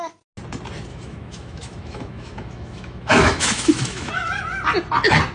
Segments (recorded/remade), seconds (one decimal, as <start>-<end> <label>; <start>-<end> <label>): 0.0-0.9 recorded; 0.9-4.1 remade; 4.1-5.3 recorded

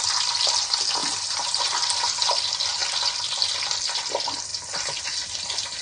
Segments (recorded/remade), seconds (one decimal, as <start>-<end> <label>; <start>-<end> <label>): 0.0-1.0 recorded; 1.0-1.6 remade; 1.6-5.8 recorded

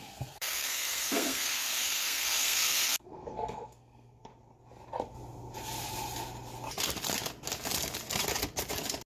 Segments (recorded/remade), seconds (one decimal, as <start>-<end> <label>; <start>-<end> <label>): 0.0-4.3 remade; 4.3-9.1 recorded

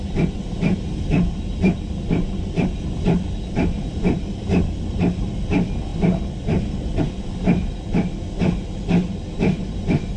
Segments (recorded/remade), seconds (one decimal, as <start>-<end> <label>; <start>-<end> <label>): 0.0-10.2 recorded

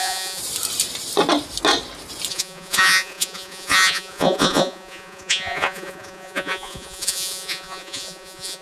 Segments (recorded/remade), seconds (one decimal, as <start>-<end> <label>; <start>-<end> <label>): 0.0-0.4 remade; 0.4-2.3 recorded; 2.3-8.6 remade

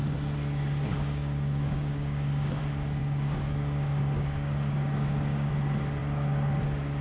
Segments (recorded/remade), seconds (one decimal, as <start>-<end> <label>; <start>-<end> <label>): 0.0-0.9 recorded; 0.9-2.6 remade; 2.6-3.0 recorded; 3.0-5.5 remade; 5.5-7.0 recorded

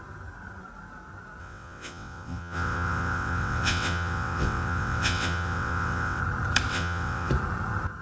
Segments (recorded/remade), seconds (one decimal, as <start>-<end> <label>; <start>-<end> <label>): 0.0-1.4 recorded; 1.4-6.2 remade; 6.2-6.7 recorded; 6.7-7.3 remade; 7.3-8.0 recorded